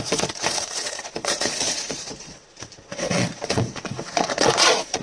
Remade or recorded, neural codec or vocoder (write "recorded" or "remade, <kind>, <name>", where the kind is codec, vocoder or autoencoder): remade, vocoder, Vocos